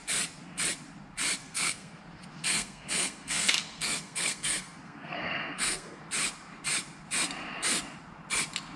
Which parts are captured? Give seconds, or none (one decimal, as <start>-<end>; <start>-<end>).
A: 0.0-1.4; 2.0-2.4; 6.0-8.8

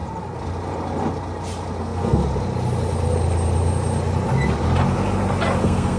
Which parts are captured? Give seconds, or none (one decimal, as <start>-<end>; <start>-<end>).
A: 0.0-1.8; 2.2-5.6

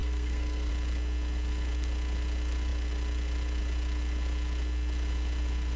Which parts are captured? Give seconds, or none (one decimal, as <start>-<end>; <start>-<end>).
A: 0.7-5.8